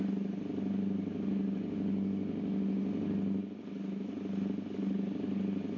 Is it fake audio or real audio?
real